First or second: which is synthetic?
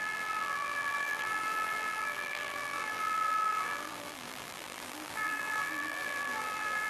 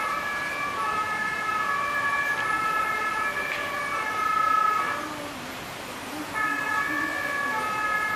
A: first